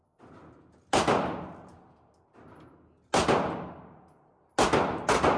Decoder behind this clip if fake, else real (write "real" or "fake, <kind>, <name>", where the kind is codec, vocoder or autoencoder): real